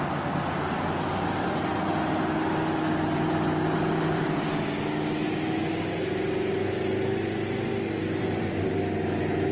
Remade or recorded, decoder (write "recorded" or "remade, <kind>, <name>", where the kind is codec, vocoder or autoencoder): recorded